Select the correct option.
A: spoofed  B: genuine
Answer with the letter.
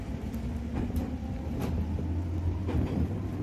B